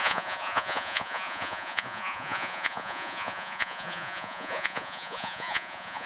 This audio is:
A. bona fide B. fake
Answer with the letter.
B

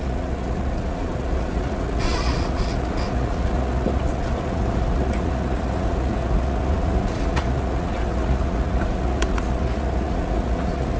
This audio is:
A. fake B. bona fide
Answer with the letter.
A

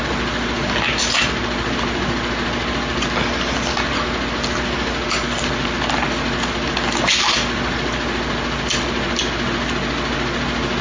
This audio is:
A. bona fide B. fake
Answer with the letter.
A